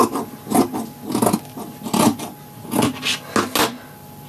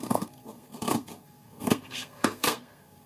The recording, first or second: first